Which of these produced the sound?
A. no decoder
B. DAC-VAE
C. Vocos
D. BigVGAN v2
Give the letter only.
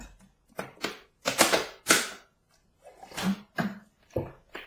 A